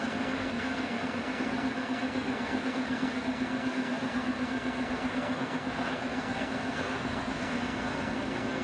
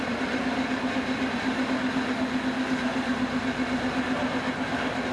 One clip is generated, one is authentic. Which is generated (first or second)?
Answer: first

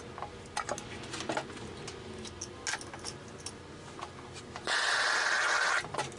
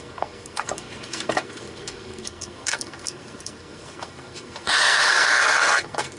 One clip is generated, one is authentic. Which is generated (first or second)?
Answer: second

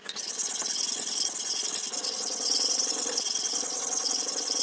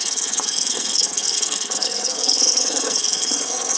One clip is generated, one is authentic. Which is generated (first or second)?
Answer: second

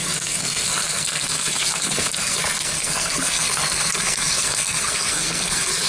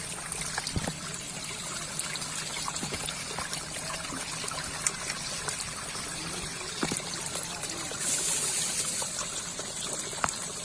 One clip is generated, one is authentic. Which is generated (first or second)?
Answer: first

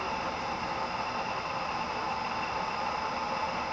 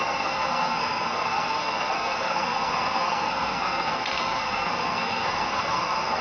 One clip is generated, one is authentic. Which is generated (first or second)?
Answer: second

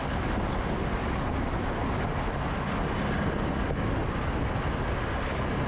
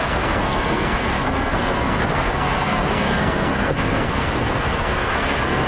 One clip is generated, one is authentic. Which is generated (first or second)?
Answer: second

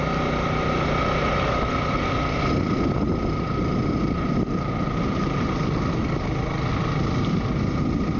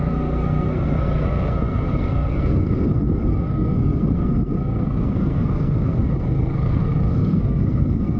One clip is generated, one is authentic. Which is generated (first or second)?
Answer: second